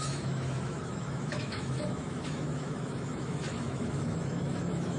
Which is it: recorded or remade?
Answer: remade